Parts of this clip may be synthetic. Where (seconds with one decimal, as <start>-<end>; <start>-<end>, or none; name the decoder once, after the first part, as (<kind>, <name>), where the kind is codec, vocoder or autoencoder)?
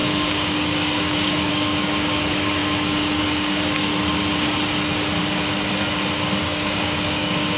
0.0-3.9 (codec, DAC); 6.4-7.6